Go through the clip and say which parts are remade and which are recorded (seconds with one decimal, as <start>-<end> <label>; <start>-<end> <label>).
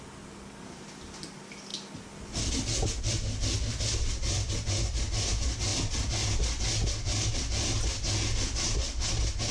0.0-9.5 recorded